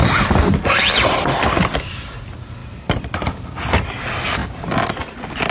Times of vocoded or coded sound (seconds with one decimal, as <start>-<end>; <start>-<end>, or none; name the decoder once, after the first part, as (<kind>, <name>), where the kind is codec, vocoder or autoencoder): 2.6-3.9 (vocoder, BigVGAN v2); 4.4-5.0